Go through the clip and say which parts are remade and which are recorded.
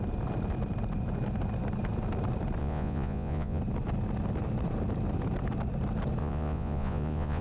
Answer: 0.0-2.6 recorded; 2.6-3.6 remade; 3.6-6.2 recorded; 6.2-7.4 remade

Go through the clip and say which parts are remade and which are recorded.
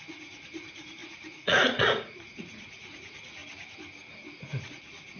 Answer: 0.0-3.4 remade; 3.4-4.7 recorded; 4.7-5.2 remade